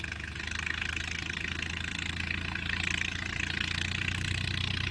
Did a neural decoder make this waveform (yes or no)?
no